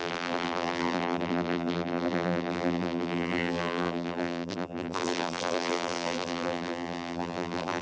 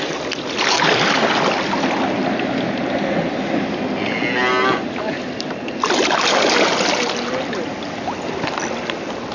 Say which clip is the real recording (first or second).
second